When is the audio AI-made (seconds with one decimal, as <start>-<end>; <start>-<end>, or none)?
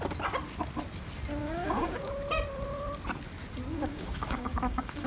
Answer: 1.4-2.1; 3.7-5.1